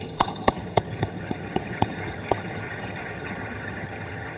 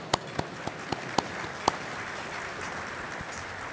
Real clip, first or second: second